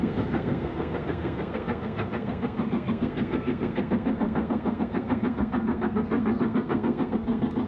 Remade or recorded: remade